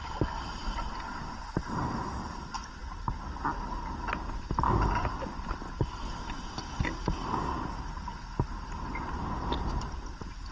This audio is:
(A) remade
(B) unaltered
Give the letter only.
B